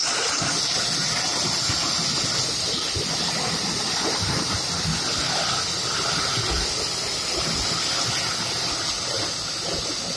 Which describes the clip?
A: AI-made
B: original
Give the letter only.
B